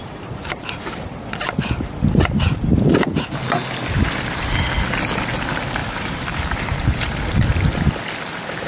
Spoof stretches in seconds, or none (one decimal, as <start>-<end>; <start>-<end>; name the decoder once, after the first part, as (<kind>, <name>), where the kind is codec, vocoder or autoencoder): 0.4-1.4 (vocoder, BigVGAN v2); 5.8-7.2